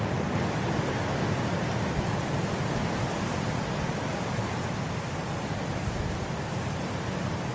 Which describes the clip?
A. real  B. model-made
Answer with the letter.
A